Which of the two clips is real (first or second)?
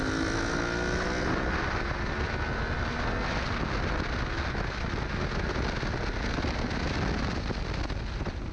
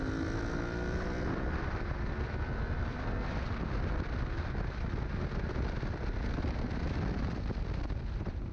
first